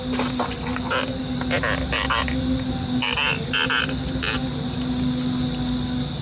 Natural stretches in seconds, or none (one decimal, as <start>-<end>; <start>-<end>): 0.0-6.2